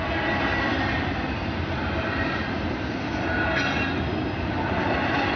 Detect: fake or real real